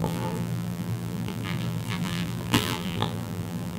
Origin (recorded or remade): remade